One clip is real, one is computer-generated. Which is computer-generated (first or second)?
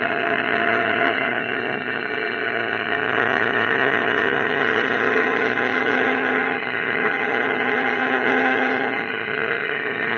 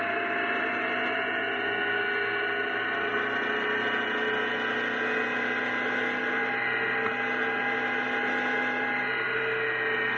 first